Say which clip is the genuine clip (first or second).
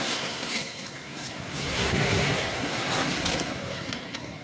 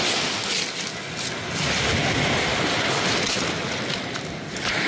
second